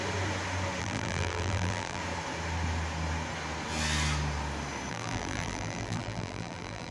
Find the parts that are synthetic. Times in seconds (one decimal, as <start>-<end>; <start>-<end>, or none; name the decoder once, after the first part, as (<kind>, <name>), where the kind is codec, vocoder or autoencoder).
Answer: 0.8-2.0 (vocoder, BigVGAN v2); 4.9-6.9